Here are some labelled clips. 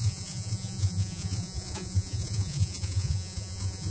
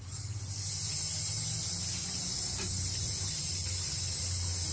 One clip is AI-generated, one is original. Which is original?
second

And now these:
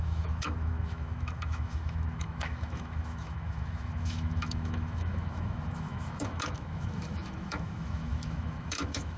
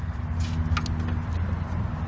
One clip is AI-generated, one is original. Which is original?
second